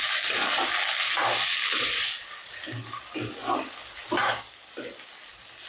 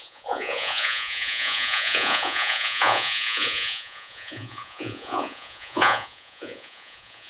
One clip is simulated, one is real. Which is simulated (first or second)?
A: second